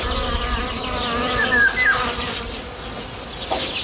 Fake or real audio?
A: real